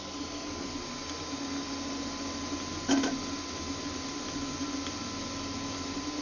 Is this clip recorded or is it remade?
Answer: recorded